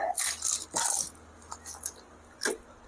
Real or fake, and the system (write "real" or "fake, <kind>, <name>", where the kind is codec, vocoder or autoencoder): real